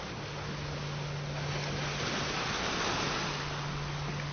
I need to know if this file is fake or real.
real